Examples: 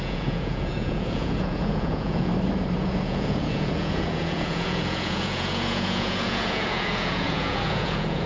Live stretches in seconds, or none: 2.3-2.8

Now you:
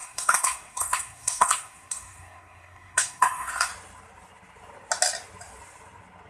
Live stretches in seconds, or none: 3.7-6.3

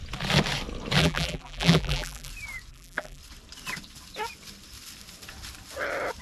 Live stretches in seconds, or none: 0.0-1.0; 2.3-2.7; 3.2-6.2

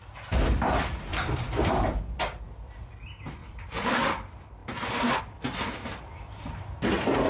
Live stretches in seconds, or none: 0.0-1.1; 1.7-3.4; 4.0-4.6; 5.2-7.3

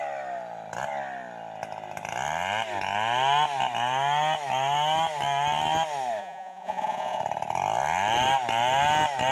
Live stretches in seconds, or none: 0.0-6.2; 7.2-9.3

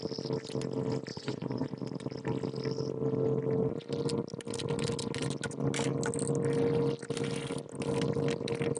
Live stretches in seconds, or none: 0.0-1.1; 1.7-8.8

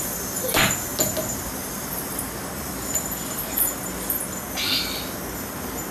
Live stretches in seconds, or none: 0.0-5.9